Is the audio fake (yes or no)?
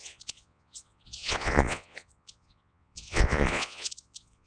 yes